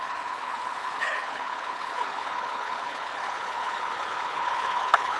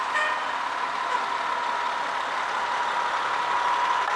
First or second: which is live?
second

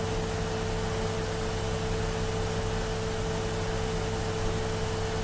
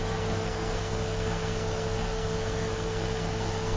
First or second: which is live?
first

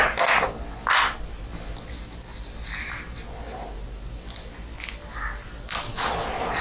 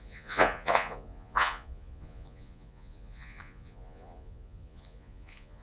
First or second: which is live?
first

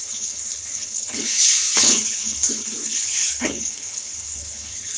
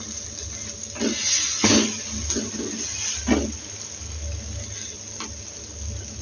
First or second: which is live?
second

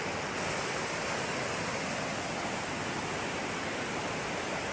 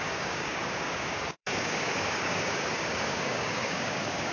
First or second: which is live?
first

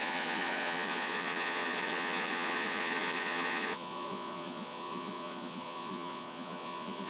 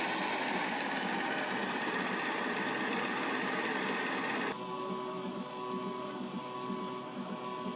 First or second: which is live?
second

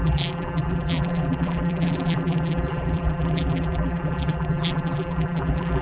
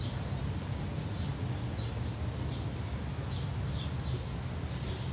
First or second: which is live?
second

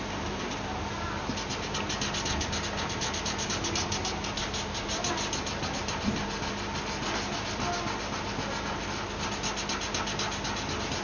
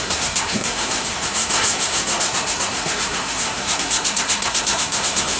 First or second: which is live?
first